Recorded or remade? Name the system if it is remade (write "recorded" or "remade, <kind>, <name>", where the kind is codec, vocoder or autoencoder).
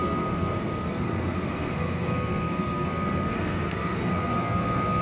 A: remade, codec, SNAC